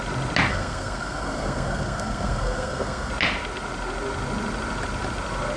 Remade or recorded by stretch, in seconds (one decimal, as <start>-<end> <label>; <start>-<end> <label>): 0.0-0.5 recorded; 0.5-3.1 remade; 3.1-5.6 recorded